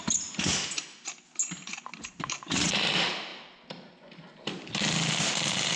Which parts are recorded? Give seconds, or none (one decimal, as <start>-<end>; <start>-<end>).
0.0-1.7; 2.9-5.8